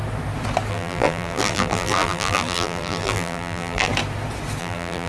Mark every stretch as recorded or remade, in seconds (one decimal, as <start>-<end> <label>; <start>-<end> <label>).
0.0-0.7 recorded; 0.7-3.9 remade; 3.9-4.6 recorded; 4.6-5.1 remade